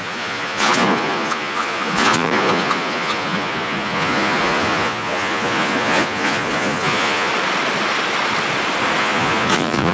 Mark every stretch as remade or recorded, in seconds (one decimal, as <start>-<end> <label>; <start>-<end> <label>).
0.0-7.3 remade; 7.3-9.0 recorded; 9.0-9.9 remade